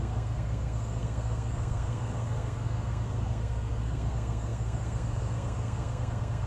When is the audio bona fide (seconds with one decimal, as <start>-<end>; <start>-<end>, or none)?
none